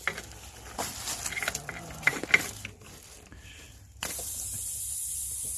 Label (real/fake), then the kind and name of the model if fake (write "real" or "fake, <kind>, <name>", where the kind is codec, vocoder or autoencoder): real